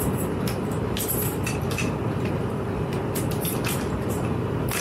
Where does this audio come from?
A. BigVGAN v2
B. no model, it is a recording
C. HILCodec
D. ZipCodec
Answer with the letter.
B